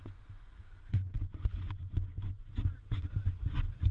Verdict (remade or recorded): remade